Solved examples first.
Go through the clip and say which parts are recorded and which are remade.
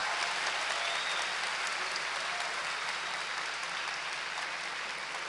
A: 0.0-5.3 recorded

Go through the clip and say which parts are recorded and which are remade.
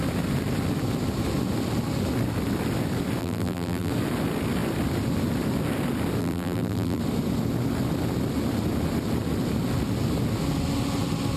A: 0.0-3.2 recorded; 3.2-3.9 remade; 3.9-6.2 recorded; 6.2-7.0 remade; 7.0-11.4 recorded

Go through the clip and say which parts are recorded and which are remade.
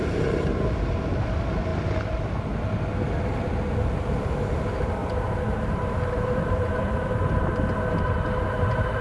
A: 0.0-1.7 remade; 1.7-4.2 recorded; 4.2-9.0 remade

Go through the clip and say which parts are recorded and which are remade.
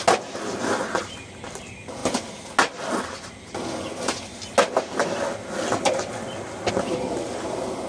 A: 0.0-7.9 recorded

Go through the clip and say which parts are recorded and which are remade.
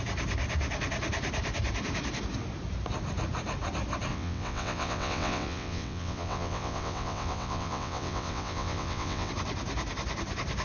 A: 0.0-4.1 recorded; 4.1-9.3 remade; 9.3-10.6 recorded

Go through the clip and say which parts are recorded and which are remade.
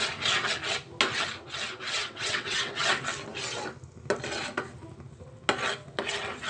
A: 0.0-2.0 recorded; 2.0-2.8 remade; 2.8-6.5 recorded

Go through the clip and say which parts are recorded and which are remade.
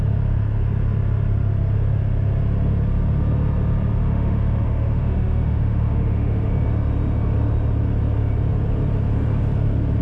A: 0.0-4.0 recorded; 4.0-6.5 remade; 6.5-10.0 recorded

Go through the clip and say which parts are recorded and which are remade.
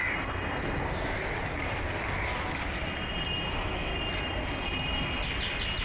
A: 0.0-3.5 recorded; 3.5-3.9 remade; 3.9-5.8 recorded